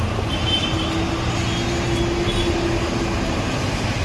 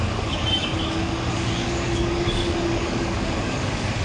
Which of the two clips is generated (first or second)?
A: second